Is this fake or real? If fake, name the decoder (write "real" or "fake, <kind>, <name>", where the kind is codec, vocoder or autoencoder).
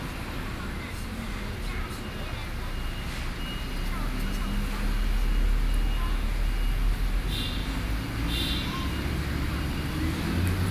real